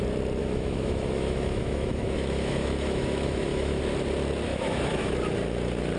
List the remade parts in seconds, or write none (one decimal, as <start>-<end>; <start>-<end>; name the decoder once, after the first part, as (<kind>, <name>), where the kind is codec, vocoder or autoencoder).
0.4-3.8 (autoencoder, DAC-VAE); 4.5-5.1